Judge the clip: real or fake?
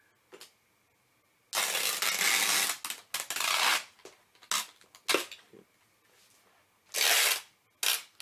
real